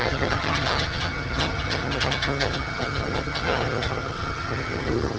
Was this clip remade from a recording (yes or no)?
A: yes